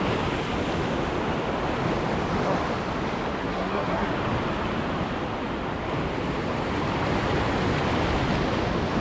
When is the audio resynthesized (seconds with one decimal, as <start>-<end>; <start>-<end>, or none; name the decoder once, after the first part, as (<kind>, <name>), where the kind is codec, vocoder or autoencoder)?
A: 3.4-4.1 (codec, SNAC)